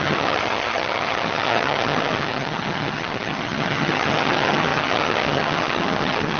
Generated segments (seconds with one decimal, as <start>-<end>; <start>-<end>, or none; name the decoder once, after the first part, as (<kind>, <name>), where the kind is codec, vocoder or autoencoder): 0.0-6.4 (vocoder, HiFi-GAN)